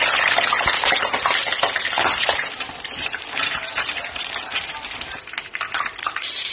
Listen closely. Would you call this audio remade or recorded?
recorded